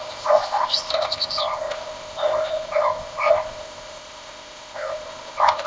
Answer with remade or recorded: remade